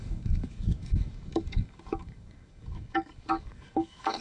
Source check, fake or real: fake